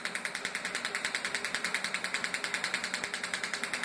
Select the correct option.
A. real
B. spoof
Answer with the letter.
A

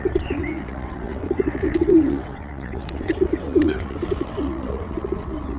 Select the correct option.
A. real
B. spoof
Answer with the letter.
B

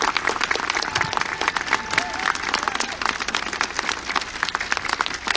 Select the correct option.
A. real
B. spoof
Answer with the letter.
A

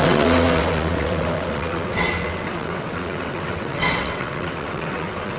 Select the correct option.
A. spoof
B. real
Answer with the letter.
A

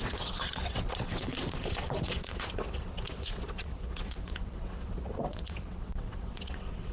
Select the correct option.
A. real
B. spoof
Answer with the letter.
B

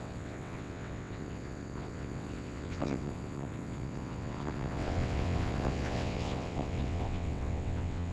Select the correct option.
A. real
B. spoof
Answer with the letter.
B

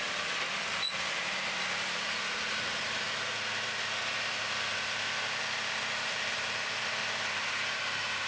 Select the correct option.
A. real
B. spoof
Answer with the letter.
A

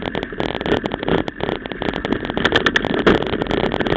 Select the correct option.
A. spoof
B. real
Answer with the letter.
B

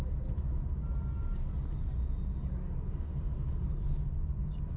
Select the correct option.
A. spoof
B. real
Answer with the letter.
B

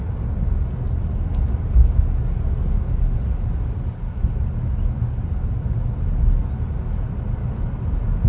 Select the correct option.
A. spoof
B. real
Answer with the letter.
B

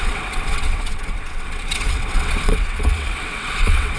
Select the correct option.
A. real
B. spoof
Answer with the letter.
B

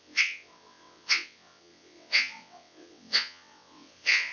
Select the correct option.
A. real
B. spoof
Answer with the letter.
B